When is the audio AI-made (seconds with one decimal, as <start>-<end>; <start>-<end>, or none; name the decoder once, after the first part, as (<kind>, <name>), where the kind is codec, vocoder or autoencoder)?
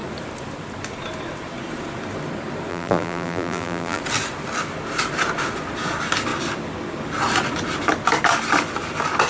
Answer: 2.7-4.0 (vocoder, BigVGAN v2)